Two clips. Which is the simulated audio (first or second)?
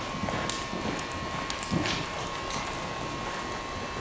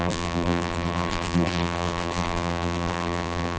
second